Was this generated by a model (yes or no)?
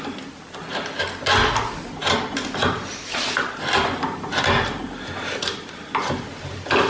no